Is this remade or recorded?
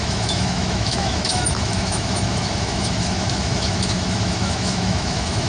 remade